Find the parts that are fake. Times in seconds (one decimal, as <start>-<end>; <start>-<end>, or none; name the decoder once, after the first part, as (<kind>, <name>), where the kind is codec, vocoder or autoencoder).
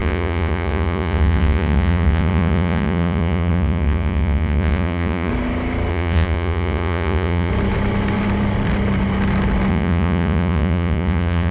0.0-5.3 (vocoder, Vocos); 5.9-7.5; 9.7-11.5